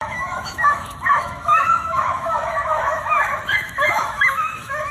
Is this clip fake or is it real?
fake